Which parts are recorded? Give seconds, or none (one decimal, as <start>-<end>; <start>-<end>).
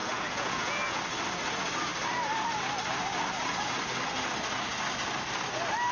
1.0-5.9